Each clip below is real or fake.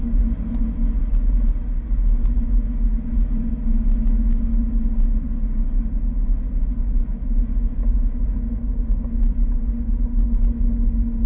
real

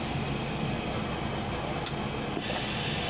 real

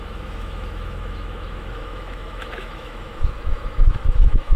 fake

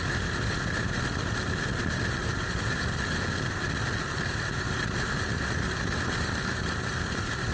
real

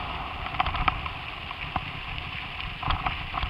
real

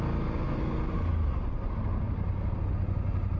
real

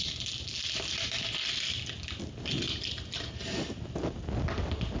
real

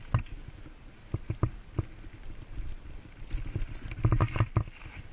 real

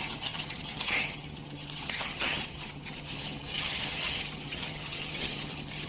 fake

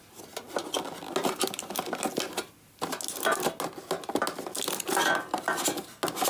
real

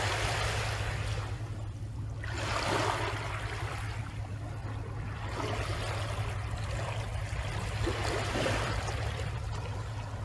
real